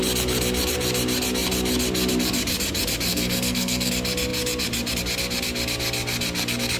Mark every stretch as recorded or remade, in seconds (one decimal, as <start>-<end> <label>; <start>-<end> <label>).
0.0-3.1 recorded; 3.1-3.9 remade; 3.9-6.8 recorded